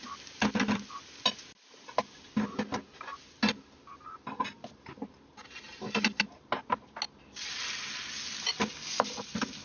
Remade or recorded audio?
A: recorded